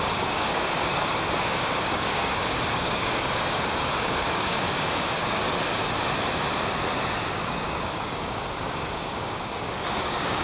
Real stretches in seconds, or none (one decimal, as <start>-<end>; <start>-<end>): 5.4-7.3